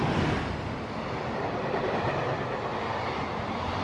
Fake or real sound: real